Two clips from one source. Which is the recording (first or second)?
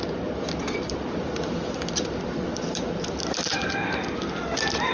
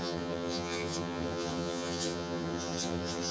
first